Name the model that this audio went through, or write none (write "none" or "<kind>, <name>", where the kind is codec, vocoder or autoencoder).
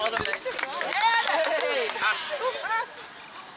none